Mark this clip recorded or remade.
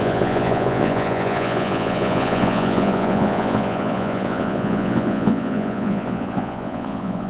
remade